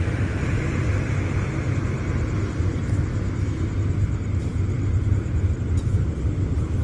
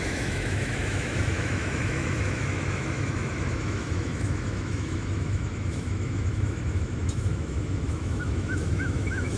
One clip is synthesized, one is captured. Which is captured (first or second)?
first